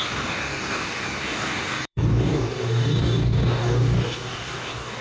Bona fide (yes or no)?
no